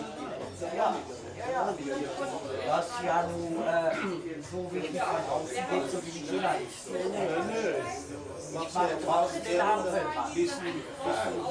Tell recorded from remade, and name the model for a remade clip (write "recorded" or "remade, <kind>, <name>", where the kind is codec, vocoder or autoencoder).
recorded